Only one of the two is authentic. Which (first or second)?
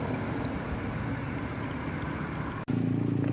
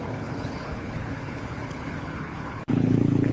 first